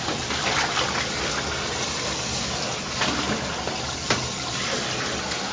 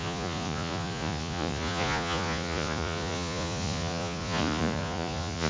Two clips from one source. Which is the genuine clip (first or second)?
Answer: first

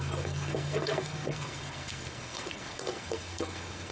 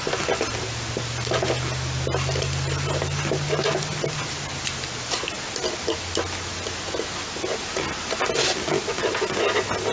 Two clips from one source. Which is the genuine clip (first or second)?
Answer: second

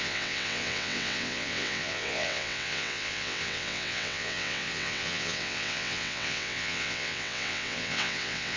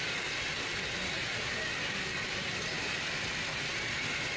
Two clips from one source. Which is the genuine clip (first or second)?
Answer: second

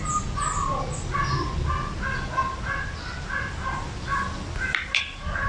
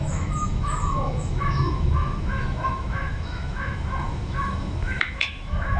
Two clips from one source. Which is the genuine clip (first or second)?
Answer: first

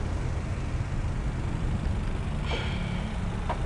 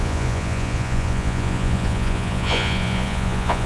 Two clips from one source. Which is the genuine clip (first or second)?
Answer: first